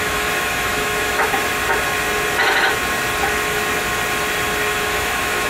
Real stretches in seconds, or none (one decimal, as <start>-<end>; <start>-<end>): 1.5-4.8